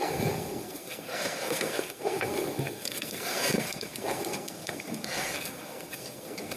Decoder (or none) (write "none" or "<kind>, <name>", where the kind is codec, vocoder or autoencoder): codec, SNAC